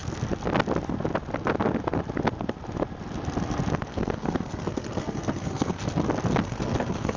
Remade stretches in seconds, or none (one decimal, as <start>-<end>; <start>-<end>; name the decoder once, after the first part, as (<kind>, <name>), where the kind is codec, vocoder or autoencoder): 3.9-5.8 (codec, SNAC); 6.4-7.2